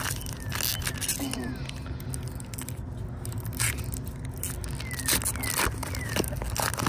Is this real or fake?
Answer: real